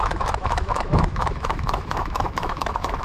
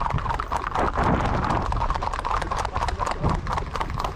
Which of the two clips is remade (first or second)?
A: first